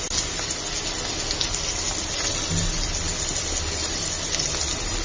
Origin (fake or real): real